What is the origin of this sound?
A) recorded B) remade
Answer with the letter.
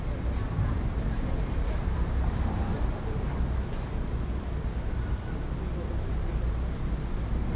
A